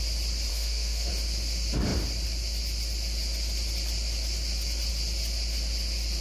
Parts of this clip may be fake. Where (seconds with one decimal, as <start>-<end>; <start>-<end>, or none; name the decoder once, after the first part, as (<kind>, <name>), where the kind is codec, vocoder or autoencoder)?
0.5-1.1 (autoencoder, DAC-VAE)